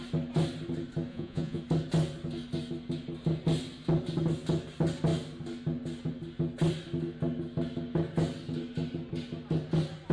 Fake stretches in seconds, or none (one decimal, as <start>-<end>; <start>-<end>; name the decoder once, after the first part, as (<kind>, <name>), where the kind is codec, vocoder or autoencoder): 1.1-1.6 (vocoder, Vocos)